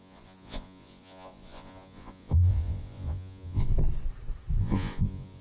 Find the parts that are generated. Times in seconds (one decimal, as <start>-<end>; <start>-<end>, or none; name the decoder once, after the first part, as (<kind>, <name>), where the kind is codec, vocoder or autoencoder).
0.0-3.7 (vocoder, Vocos); 4.6-5.4